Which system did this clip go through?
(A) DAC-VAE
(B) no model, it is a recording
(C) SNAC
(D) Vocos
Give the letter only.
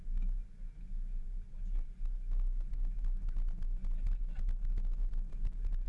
B